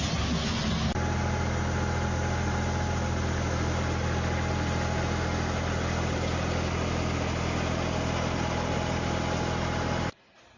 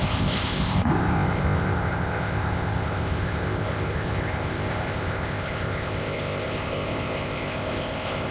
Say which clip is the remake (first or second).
second